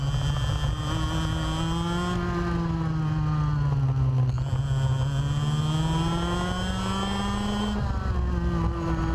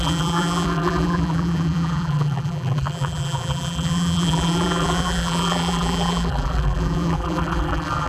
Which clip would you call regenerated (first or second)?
second